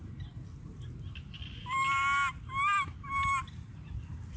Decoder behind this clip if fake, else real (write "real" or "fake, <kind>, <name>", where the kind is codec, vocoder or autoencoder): real